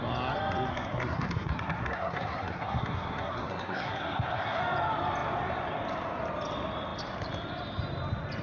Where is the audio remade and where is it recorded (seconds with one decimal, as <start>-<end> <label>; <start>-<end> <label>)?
0.0-0.7 recorded; 0.7-4.6 remade; 4.6-8.4 recorded